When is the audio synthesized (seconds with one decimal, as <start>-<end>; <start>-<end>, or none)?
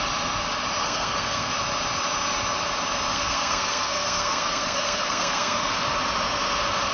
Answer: 0.8-1.5; 3.1-5.7